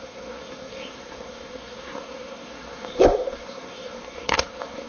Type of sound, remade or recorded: remade